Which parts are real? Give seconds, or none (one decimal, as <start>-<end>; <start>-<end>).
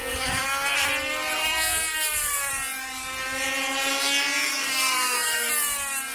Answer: 0.9-1.4; 2.5-4.5; 5.5-6.1